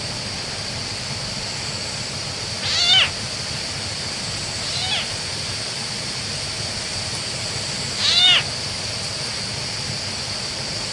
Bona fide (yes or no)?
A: yes